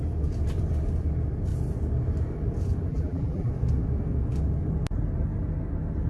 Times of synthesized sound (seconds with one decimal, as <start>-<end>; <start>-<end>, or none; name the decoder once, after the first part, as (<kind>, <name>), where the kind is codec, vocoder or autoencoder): 2.9-3.5 (vocoder, BigVGAN v2)